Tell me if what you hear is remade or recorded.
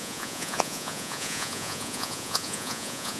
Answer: remade